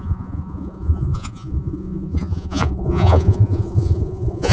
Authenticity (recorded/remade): remade